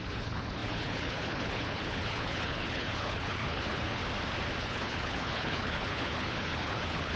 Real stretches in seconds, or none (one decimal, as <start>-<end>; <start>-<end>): 4.0-4.6